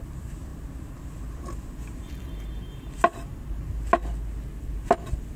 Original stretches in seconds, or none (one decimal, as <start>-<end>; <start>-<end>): 0.0-5.4